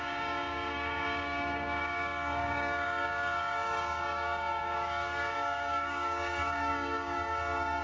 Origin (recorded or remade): remade